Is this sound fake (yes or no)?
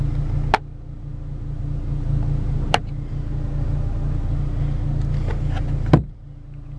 no